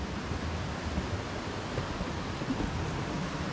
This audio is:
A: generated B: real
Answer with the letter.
B